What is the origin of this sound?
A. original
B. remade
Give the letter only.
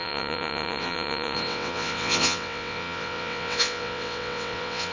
B